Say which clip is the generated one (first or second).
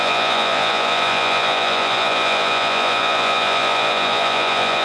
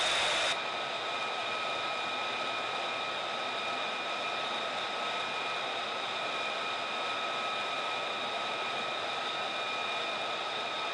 first